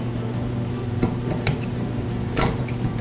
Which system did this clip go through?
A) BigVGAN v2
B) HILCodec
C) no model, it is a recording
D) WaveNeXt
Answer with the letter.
A